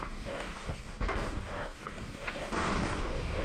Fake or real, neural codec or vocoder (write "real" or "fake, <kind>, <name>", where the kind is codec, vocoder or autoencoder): fake, codec, DAC